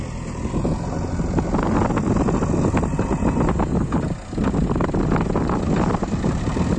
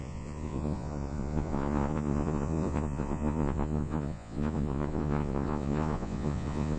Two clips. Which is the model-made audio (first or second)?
second